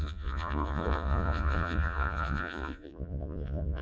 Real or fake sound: fake